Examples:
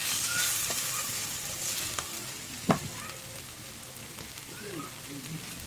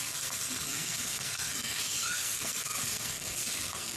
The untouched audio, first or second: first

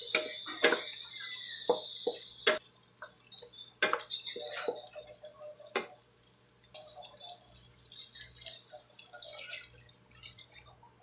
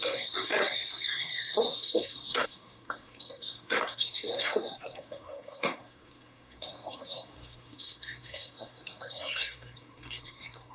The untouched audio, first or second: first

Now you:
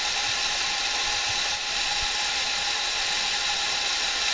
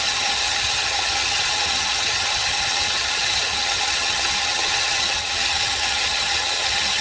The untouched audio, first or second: first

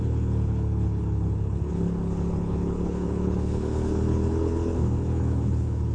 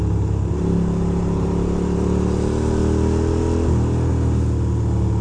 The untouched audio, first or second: second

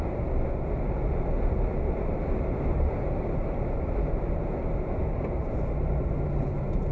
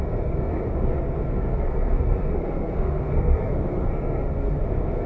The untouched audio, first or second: first